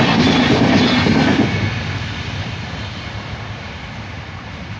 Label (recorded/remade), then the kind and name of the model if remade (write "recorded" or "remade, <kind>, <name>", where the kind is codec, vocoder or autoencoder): recorded